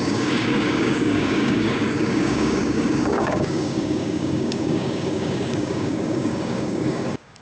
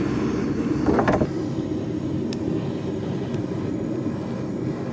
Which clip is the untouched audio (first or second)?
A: second